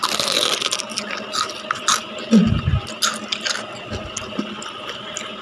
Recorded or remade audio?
recorded